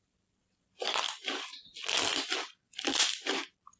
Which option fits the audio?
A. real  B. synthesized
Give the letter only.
A